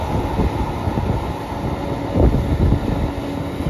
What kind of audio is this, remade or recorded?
recorded